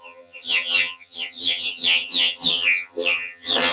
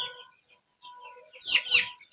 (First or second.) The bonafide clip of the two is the second